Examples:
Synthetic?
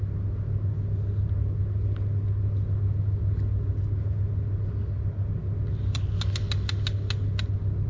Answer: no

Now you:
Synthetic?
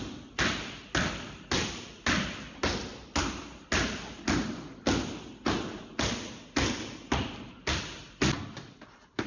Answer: no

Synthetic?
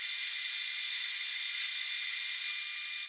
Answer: no